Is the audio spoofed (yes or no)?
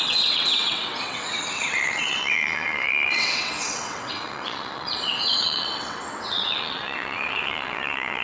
yes